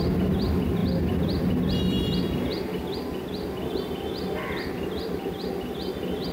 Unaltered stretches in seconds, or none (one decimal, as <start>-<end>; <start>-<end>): 0.0-6.3